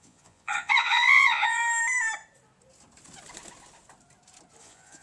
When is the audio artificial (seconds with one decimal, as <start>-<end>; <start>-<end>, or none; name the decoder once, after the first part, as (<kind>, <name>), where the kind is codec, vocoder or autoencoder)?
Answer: 0.0-1.6 (vocoder, Vocos); 4.6-5.0